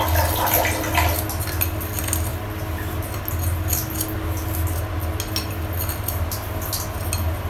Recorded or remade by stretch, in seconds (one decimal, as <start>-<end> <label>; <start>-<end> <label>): 0.0-7.5 recorded